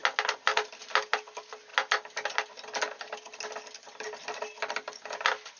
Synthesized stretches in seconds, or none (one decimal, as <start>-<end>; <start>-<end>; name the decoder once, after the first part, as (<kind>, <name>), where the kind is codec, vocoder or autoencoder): none